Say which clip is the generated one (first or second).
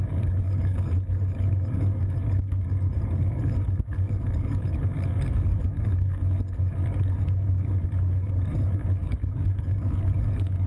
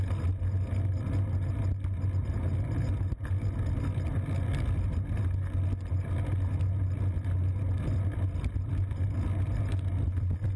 first